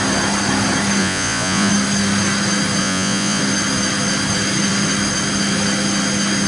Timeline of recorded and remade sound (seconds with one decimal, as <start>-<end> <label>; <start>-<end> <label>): 0.0-1.0 recorded; 1.0-1.7 remade; 1.7-2.8 recorded; 2.8-3.4 remade; 3.4-6.5 recorded